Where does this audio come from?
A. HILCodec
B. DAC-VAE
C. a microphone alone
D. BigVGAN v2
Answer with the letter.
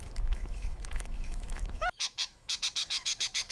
B